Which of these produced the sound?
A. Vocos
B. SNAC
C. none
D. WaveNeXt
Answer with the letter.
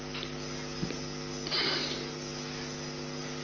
C